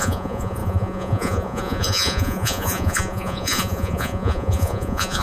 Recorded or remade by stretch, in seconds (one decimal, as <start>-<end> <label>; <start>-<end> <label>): 0.0-5.2 remade